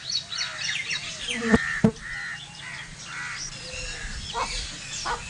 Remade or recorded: recorded